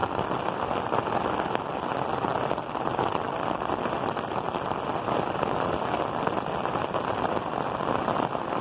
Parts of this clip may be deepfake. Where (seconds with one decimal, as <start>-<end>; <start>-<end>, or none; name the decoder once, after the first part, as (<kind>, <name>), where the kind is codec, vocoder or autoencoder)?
none